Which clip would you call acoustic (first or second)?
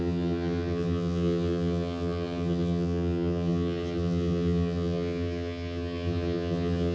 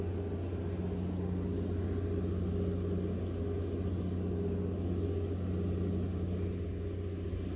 second